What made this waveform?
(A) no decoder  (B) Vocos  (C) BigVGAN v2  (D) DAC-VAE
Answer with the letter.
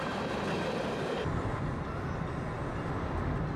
A